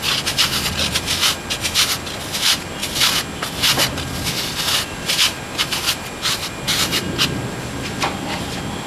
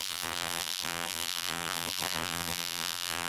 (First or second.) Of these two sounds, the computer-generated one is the second